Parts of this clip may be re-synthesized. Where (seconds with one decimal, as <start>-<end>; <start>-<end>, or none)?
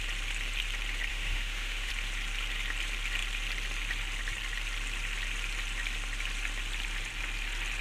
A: 1.1-1.9